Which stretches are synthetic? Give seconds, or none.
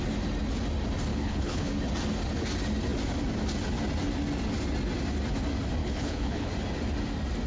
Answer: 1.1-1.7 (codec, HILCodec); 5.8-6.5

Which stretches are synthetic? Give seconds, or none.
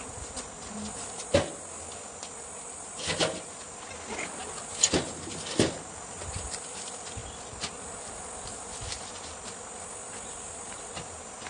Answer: none